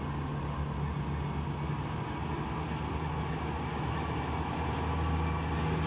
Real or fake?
real